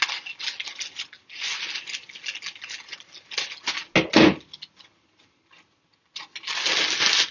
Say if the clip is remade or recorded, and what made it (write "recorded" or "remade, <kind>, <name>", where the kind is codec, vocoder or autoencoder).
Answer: recorded